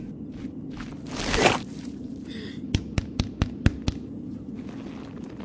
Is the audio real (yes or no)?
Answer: yes